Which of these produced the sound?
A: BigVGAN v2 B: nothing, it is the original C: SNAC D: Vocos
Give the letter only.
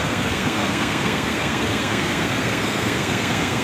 C